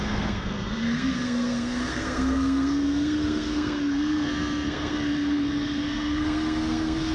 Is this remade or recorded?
remade